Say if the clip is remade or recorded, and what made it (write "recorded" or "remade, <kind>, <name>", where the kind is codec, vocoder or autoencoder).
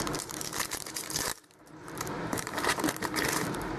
remade, vocoder, BigVGAN v2